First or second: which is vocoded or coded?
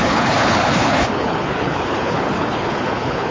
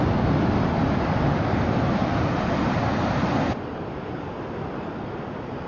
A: first